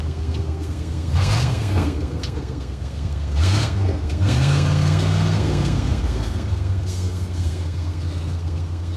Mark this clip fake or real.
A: fake